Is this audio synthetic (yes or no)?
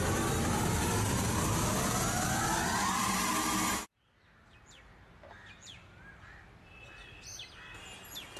no